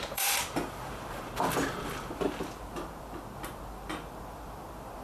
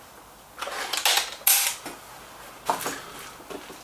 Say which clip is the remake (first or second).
first